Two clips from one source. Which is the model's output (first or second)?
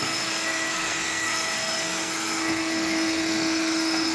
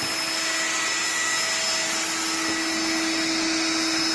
first